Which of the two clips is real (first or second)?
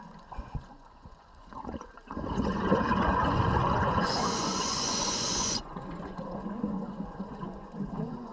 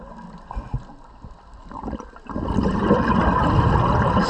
second